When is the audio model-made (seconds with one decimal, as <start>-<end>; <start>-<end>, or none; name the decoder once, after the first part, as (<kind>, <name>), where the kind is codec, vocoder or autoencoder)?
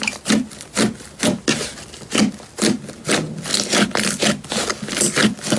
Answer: none